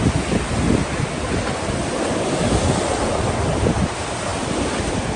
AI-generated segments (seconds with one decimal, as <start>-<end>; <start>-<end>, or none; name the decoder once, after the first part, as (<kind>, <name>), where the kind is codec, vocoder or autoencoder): 4.3-4.8 (vocoder, BigVGAN v2)